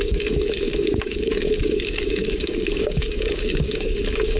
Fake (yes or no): yes